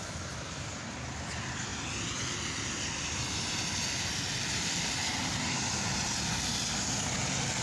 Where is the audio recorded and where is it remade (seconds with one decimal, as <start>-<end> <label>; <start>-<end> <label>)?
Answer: 0.0-7.6 recorded